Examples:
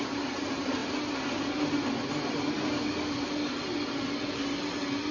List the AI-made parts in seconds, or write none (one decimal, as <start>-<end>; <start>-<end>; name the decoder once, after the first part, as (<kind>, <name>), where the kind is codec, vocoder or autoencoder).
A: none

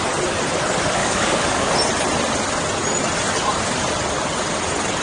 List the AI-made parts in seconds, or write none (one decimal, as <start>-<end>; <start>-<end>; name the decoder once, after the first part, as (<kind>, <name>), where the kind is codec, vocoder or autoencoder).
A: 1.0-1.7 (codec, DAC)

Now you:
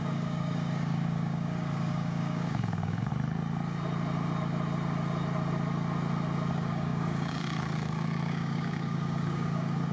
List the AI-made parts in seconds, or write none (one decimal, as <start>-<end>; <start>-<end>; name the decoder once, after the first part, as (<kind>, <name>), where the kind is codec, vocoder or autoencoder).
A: 0.0-3.1 (codec, DAC); 6.5-9.9

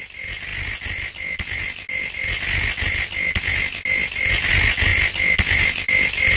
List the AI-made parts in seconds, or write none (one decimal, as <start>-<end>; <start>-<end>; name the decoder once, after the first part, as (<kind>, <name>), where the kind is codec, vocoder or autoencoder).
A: none

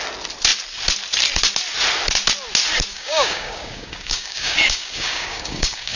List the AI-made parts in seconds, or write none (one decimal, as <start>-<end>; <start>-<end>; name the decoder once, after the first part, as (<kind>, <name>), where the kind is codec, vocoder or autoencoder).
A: 2.9-6.0 (codec, DAC)

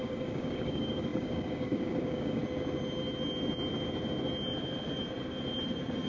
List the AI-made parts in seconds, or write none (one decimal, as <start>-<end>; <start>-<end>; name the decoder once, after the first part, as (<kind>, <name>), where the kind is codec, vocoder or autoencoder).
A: 0.0-2.4 (codec, DAC)